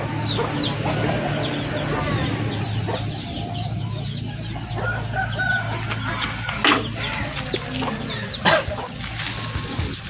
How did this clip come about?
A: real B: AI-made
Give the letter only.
A